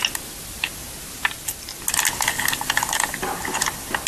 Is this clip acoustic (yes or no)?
yes